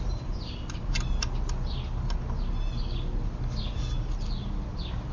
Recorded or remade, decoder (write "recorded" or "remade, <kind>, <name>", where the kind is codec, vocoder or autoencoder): recorded